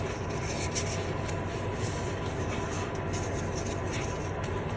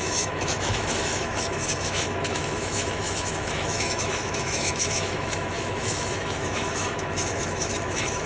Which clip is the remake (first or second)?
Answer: second